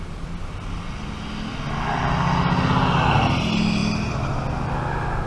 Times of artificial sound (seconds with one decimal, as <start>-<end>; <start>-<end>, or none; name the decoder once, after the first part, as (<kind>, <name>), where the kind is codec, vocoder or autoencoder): none